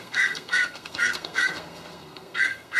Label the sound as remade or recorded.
remade